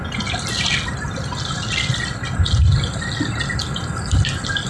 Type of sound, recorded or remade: recorded